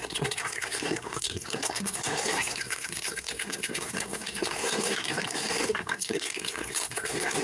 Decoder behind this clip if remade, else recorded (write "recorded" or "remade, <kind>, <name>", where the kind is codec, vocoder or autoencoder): remade, codec, SNAC